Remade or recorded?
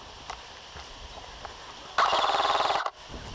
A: remade